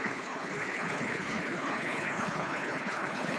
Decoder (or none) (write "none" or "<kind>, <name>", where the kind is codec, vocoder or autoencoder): codec, HILCodec